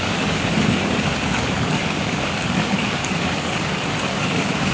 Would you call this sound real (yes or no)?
no